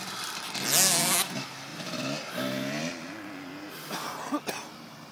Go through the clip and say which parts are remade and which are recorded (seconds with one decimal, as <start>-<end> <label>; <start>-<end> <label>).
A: 0.0-5.1 recorded